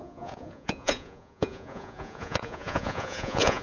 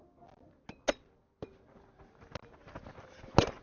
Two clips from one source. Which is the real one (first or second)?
second